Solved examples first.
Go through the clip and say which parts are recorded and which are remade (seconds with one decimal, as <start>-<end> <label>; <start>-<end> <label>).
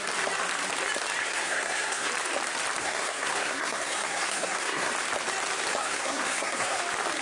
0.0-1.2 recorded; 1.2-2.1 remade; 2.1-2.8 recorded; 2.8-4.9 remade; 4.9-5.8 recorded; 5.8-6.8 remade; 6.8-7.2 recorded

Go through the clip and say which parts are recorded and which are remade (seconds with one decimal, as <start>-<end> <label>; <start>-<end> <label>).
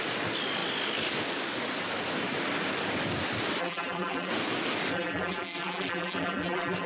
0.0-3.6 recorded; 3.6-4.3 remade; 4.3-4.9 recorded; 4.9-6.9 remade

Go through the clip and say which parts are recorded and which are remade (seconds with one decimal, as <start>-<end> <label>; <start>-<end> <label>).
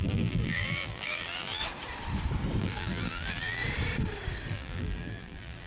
0.0-1.6 remade; 1.6-2.6 recorded; 2.6-3.6 remade; 3.6-4.5 recorded; 4.5-5.7 remade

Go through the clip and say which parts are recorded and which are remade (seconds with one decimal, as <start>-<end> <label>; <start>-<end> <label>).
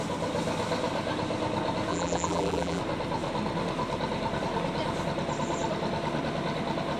0.0-1.9 recorded; 1.9-2.8 remade; 2.8-7.0 recorded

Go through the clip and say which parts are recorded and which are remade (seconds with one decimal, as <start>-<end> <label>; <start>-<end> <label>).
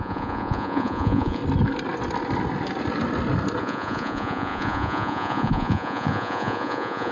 0.0-1.4 remade; 1.4-3.6 recorded; 3.6-7.1 remade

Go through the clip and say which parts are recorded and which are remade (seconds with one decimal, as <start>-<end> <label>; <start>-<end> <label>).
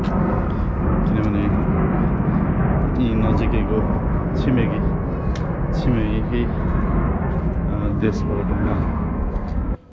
0.0-7.9 recorded; 7.9-9.9 remade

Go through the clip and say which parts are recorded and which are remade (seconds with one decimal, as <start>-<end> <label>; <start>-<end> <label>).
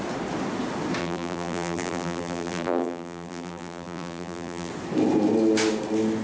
0.0-1.0 recorded; 1.0-4.7 remade; 4.7-6.2 recorded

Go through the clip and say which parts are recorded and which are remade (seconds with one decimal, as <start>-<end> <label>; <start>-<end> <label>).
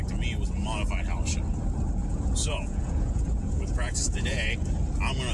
0.0-2.0 recorded; 2.0-4.5 remade; 4.5-5.3 recorded